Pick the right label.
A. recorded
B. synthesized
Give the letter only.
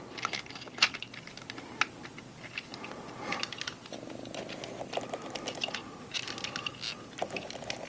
A